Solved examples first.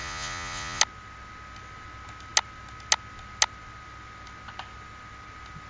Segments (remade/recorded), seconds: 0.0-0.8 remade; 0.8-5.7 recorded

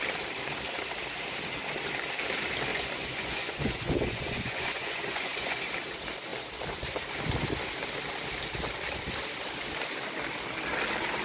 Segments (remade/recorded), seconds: 0.0-2.7 recorded; 2.7-5.6 remade; 5.6-11.2 recorded